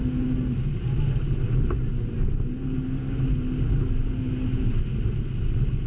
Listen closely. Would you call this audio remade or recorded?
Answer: recorded